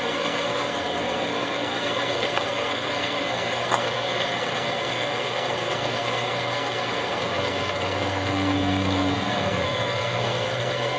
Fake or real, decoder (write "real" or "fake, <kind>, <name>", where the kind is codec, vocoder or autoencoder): fake, codec, SNAC